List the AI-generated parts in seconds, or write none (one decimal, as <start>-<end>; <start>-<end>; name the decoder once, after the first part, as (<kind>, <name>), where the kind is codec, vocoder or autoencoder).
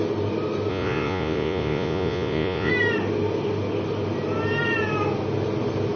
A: 0.7-2.7 (vocoder, Vocos)